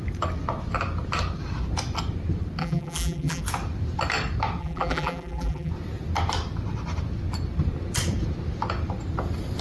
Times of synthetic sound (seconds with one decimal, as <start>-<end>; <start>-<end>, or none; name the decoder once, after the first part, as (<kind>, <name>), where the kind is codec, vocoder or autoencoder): 2.6-3.4 (vocoder, BigVGAN v2); 4.6-5.7